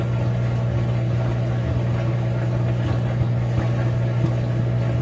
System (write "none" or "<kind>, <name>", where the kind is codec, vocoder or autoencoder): none